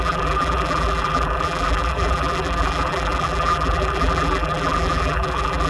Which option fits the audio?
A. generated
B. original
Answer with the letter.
A